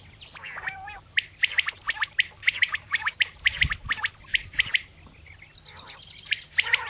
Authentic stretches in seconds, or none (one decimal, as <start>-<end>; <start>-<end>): 0.0-2.4; 3.2-6.9